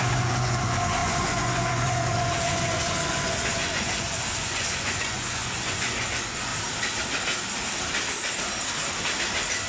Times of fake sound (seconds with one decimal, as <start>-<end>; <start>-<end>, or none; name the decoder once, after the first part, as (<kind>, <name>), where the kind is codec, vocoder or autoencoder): 0.0-6.5 (vocoder, Vocos)

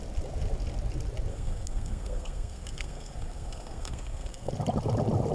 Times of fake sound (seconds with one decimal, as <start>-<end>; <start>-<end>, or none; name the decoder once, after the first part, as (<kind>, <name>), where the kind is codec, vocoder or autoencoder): 1.3-4.5 (codec, SNAC)

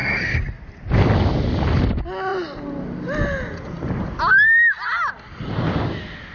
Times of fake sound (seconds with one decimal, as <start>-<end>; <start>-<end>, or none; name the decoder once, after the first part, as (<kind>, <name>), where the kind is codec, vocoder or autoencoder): none

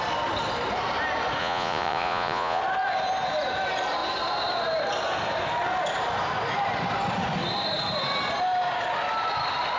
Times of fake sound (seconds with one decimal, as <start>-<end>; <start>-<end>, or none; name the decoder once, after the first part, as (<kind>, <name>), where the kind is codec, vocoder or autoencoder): 1.4-2.6 (vocoder, Vocos)

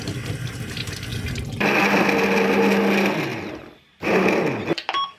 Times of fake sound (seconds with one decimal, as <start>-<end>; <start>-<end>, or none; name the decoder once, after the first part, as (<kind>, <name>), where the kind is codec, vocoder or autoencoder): none

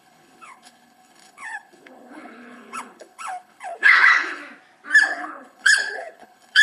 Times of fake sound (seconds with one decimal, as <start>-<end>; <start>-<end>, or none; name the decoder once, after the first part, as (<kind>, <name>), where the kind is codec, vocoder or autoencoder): 0.0-4.4 (codec, HILCodec); 5.0-6.6